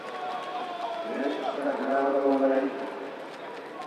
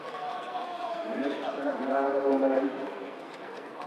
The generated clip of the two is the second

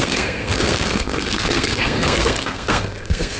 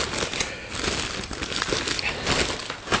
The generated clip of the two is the first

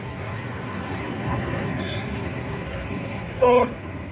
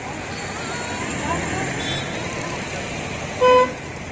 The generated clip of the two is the first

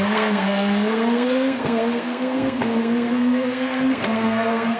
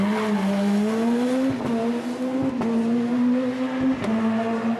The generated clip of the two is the first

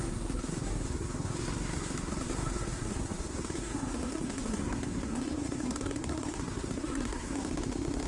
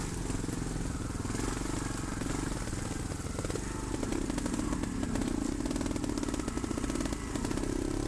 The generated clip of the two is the first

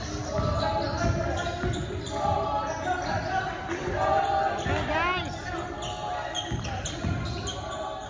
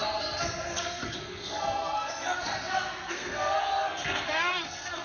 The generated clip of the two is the second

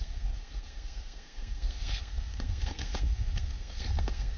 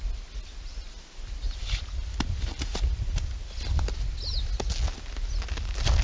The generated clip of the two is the first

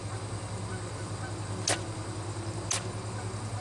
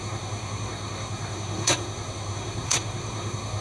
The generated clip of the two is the second